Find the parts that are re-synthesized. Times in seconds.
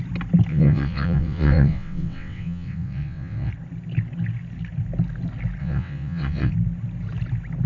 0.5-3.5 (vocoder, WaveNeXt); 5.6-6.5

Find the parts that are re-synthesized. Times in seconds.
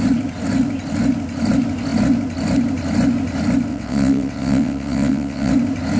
3.7-5.5 (vocoder, WaveNeXt)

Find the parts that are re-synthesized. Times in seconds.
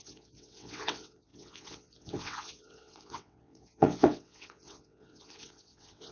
0.0-6.1 (vocoder, WaveNeXt)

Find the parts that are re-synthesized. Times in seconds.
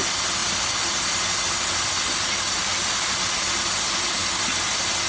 none